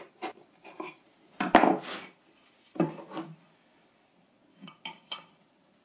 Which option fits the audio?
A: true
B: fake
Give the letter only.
A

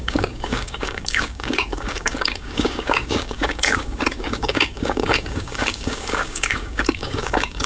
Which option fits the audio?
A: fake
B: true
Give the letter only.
A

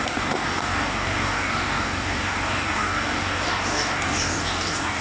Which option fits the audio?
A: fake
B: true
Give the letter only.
A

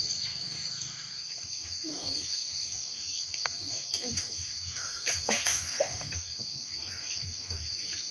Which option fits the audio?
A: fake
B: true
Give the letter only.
A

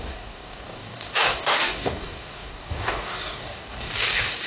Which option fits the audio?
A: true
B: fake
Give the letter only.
B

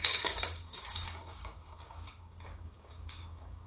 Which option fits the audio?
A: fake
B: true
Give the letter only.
A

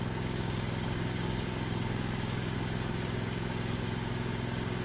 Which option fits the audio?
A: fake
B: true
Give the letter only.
A